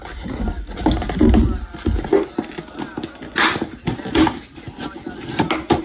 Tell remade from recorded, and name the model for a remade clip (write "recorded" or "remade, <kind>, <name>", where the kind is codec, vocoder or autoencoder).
recorded